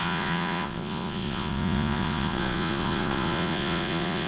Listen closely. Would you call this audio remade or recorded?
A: remade